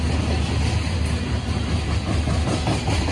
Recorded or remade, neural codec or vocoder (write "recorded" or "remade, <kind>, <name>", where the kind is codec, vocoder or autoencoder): recorded